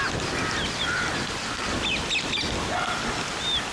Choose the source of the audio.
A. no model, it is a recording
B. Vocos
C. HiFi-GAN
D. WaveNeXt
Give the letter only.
A